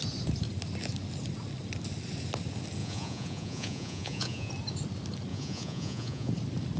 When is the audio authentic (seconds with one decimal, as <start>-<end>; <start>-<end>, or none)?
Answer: 0.0-2.8; 4.5-5.3; 6.3-6.8